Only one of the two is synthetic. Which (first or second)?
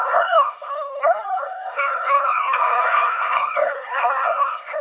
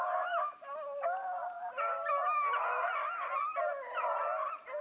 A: first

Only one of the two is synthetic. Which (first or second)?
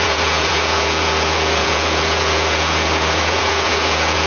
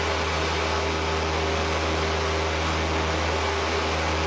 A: first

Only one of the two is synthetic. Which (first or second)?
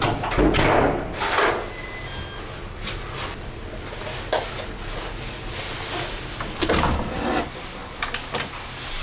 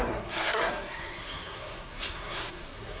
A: second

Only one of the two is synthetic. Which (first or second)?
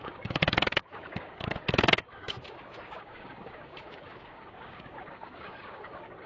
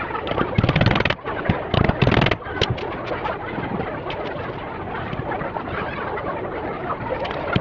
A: first